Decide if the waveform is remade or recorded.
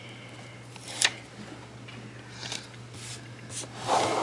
recorded